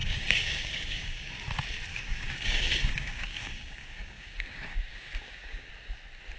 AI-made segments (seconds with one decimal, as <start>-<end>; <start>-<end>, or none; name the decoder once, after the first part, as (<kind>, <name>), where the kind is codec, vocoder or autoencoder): 0.0-1.3 (codec, DAC); 1.9-5.7